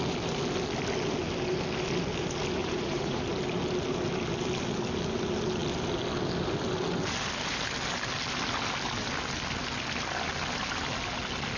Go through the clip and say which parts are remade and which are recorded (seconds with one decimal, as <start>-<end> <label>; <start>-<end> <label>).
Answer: 0.0-2.6 recorded; 2.6-3.2 remade; 3.2-11.6 recorded